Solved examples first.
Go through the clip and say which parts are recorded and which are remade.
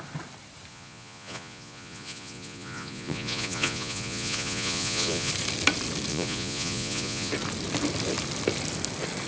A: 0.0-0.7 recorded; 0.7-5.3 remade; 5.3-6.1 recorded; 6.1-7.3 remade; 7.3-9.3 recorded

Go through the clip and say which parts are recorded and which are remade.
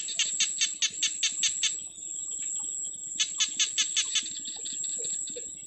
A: 0.0-5.7 recorded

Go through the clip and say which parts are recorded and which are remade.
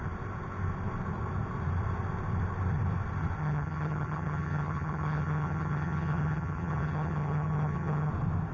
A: 0.0-3.4 recorded; 3.4-8.1 remade; 8.1-8.5 recorded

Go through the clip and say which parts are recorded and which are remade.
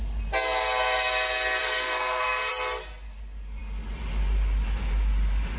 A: 0.0-1.6 recorded; 1.6-2.5 remade; 2.5-5.6 recorded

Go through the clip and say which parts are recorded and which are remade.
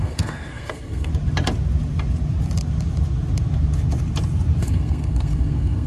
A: 0.0-1.1 remade; 1.1-4.6 recorded; 4.6-5.9 remade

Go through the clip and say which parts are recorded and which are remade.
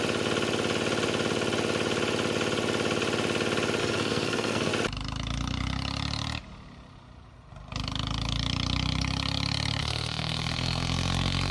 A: 0.0-3.8 recorded; 3.8-4.7 remade; 4.7-9.8 recorded; 9.8-11.5 remade